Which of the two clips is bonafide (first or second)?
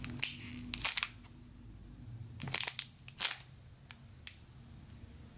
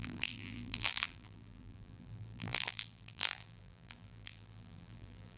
first